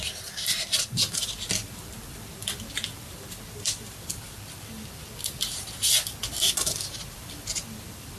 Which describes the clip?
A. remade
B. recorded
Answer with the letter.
A